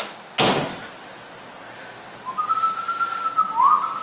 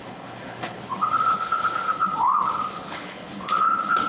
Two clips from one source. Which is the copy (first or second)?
second